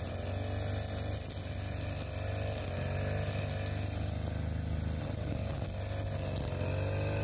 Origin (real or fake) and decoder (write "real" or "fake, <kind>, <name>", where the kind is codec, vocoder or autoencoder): real